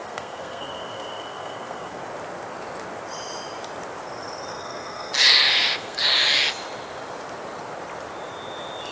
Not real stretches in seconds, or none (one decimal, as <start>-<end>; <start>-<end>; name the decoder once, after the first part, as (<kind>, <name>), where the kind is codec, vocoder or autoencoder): 0.0-2.0 (codec, SNAC); 4.5-5.1; 5.5-6.0